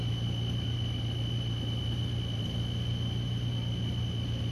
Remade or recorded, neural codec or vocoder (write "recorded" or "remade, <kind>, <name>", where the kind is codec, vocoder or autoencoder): recorded